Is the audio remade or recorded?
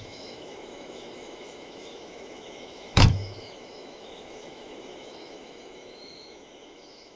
remade